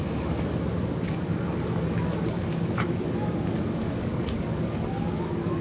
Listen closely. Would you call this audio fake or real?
fake